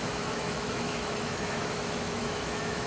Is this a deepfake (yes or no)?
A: yes